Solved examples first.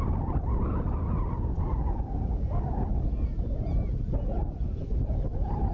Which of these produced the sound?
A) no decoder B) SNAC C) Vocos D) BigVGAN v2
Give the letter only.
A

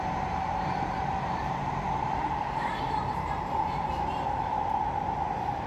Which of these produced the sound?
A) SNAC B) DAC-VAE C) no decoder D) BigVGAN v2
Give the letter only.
D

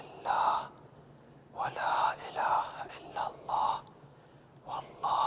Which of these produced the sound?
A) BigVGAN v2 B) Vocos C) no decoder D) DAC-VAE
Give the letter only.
C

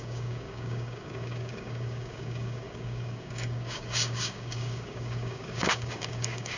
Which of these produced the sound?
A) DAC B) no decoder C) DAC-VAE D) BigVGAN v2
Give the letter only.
A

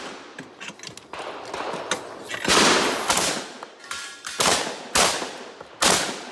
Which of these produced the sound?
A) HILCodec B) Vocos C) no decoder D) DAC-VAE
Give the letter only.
C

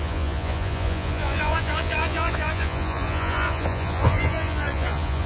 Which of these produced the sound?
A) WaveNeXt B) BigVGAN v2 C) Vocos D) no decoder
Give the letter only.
C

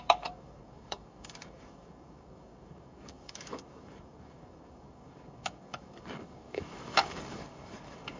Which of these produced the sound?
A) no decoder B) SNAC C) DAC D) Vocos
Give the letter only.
C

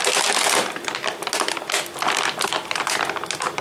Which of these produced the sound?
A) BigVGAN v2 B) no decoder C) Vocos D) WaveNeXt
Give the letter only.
B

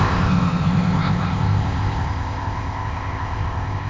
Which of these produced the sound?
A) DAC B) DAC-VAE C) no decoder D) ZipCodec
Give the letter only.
D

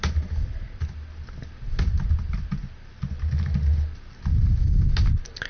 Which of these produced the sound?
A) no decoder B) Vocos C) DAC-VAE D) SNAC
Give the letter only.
A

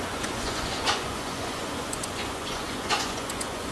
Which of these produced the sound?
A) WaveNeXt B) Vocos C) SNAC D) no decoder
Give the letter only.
B